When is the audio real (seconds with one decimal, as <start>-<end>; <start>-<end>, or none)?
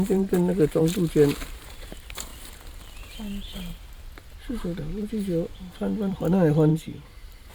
0.8-1.4; 2.3-6.1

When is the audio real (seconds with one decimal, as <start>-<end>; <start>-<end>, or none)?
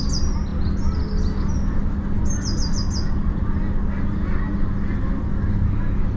0.0-6.2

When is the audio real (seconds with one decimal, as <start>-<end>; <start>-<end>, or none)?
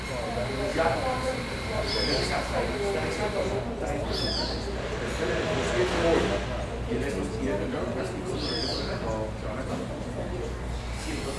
0.0-0.7; 2.6-11.4